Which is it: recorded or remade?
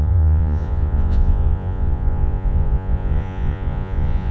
remade